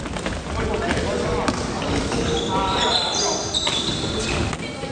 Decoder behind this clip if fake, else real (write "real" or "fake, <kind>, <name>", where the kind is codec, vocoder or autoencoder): real